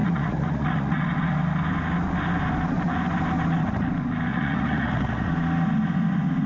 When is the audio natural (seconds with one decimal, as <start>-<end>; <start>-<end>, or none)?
1.0-4.3; 5.3-6.5

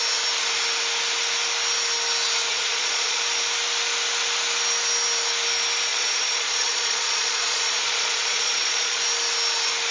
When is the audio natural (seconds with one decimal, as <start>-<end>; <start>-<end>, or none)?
0.0-2.5; 3.2-5.9; 9.0-9.9

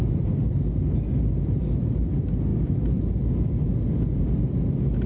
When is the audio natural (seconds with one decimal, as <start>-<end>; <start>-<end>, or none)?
0.0-5.1